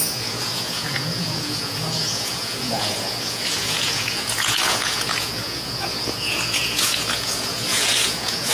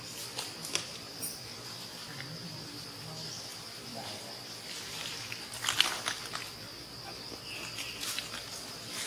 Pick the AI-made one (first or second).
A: first